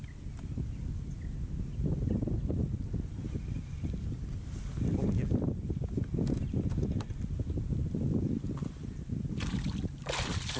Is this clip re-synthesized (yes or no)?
no